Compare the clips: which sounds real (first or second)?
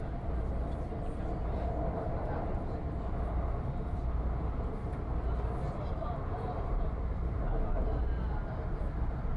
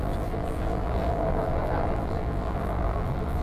first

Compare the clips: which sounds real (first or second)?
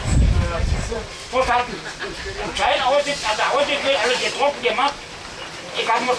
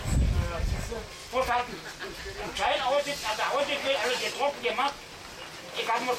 second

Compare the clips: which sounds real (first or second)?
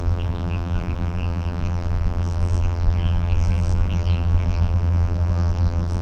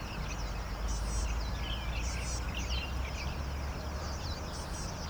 second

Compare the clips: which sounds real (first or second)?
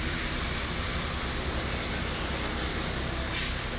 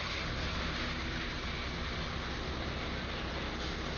second